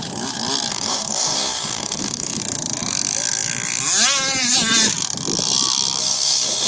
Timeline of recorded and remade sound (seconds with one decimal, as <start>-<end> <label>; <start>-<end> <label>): 0.0-0.7 recorded; 0.7-2.4 remade; 2.4-6.0 recorded; 6.0-6.7 remade